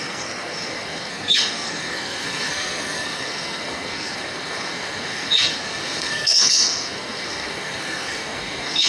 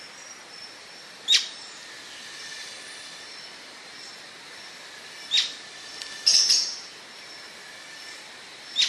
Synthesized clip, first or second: first